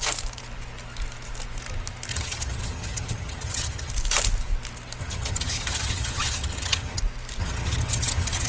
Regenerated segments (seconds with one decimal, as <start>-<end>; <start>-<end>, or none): 2.1-3.9; 5.0-7.0; 7.4-8.5